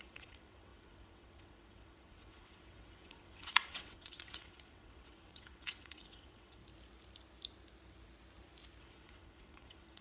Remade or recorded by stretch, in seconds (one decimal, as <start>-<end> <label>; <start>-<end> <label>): 0.0-6.6 remade; 6.6-8.8 recorded; 8.8-10.0 remade